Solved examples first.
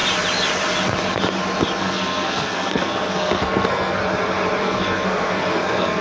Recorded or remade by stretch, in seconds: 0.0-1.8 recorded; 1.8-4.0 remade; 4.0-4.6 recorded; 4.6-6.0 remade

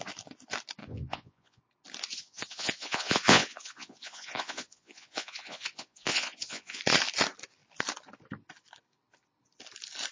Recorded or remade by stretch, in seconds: 0.0-0.8 recorded; 0.8-1.6 remade; 1.6-2.1 recorded; 2.1-6.8 remade; 6.8-10.1 recorded

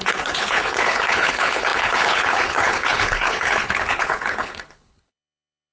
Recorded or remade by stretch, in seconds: 0.0-5.7 remade

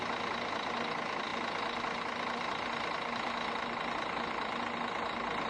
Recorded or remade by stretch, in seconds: 0.0-5.5 recorded

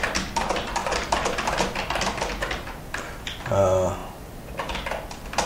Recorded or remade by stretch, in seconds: 0.0-5.5 recorded